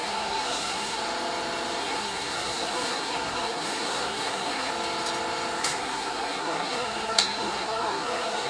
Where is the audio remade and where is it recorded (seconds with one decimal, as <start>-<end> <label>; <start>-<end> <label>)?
0.0-1.0 remade; 1.0-1.8 recorded; 1.8-4.7 remade; 4.7-5.6 recorded; 5.6-8.5 remade